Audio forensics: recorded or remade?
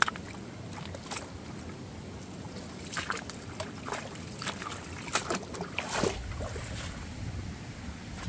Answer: recorded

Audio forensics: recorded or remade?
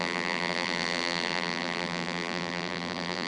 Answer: remade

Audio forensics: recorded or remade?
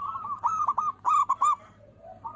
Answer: remade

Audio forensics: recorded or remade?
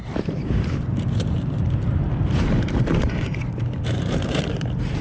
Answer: remade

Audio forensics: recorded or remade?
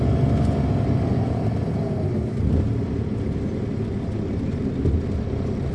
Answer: recorded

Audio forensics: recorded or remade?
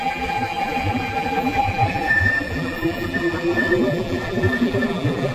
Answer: remade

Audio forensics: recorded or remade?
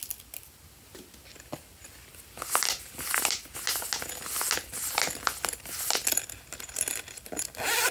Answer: recorded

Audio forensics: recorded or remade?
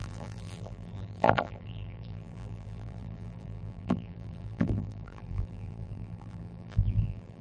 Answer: remade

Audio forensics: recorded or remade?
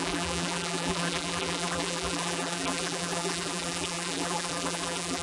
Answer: remade